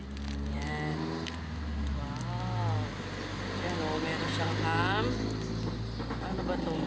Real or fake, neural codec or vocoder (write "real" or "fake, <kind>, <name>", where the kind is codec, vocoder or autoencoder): real